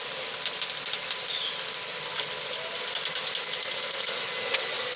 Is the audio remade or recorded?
recorded